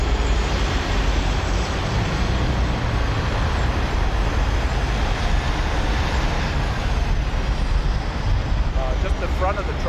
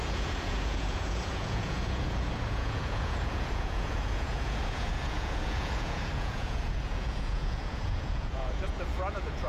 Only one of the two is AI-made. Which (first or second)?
second